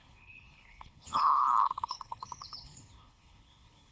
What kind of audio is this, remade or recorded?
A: remade